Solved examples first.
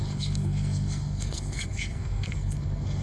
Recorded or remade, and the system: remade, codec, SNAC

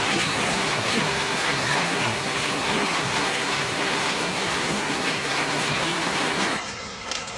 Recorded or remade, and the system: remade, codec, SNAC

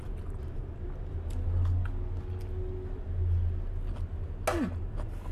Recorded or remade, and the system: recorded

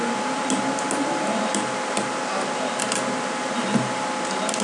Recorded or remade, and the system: recorded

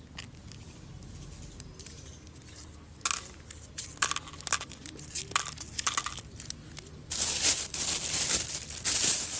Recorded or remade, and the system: recorded